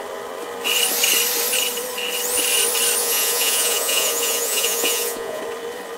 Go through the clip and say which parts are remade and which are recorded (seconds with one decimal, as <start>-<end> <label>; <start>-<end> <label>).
0.0-3.0 recorded; 3.0-5.4 remade; 5.4-6.0 recorded